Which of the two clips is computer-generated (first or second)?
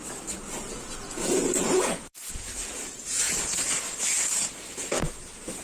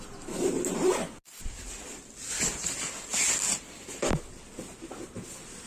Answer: first